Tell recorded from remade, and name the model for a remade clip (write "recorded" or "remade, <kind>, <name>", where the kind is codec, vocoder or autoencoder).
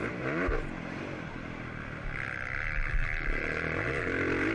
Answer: recorded